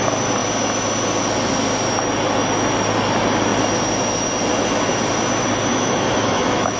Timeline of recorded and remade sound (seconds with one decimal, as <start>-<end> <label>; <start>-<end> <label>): 0.0-5.7 recorded; 5.7-6.8 remade